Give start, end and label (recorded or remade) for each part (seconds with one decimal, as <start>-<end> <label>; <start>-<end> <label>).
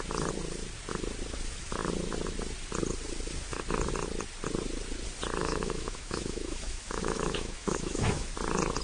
0.0-5.4 recorded; 5.4-8.3 remade; 8.3-8.8 recorded